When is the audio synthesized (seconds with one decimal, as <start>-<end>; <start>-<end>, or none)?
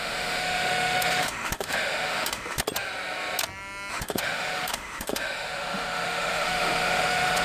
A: 0.0-2.6; 3.9-7.4